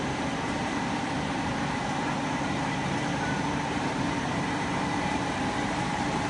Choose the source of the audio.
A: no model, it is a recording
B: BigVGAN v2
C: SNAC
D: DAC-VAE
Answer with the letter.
B